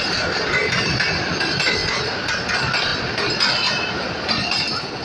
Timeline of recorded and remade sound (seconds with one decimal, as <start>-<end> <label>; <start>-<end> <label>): 0.0-5.0 recorded